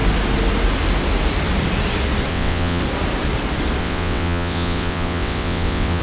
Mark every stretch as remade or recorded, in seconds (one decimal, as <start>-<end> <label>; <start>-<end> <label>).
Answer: 0.0-2.3 recorded; 2.3-2.8 remade; 2.8-3.8 recorded; 3.8-6.0 remade

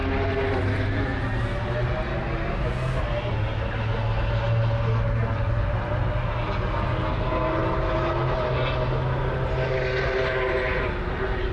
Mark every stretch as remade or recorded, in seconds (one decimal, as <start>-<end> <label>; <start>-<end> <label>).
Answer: 0.0-11.5 recorded